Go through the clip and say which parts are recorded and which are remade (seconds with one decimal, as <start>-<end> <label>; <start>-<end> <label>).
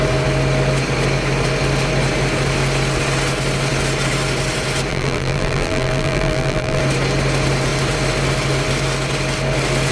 0.0-4.9 recorded; 4.9-6.8 remade; 6.8-9.9 recorded